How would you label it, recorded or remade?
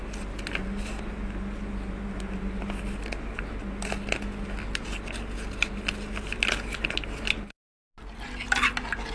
recorded